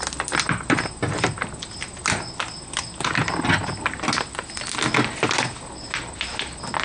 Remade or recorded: recorded